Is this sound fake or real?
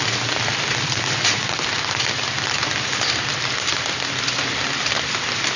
fake